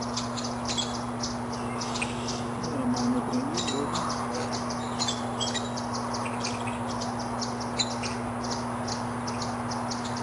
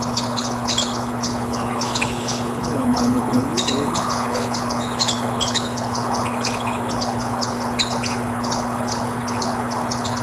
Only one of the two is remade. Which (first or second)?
second